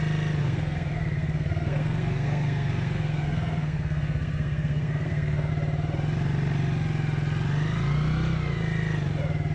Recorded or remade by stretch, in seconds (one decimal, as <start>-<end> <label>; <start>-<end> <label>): 0.0-0.4 recorded; 0.4-5.5 remade; 5.5-9.5 recorded